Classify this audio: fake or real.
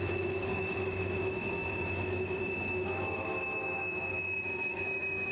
fake